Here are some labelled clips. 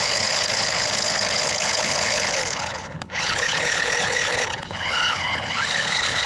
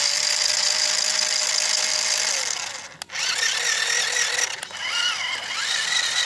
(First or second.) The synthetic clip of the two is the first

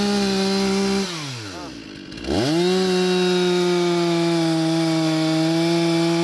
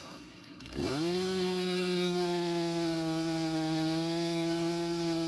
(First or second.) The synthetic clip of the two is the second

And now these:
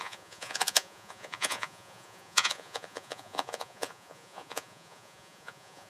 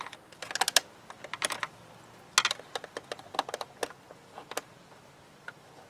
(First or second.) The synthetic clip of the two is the first